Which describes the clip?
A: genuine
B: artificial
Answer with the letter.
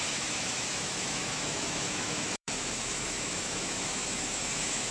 B